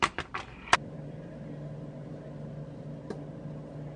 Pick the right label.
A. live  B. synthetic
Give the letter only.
A